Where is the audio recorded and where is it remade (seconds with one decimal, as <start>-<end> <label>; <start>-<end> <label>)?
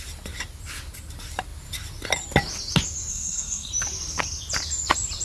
0.0-3.1 recorded; 3.1-3.7 remade; 3.7-5.2 recorded